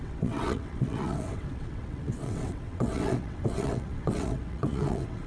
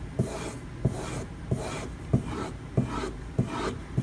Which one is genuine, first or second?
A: second